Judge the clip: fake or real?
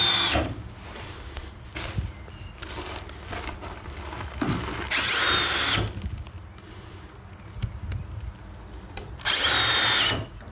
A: real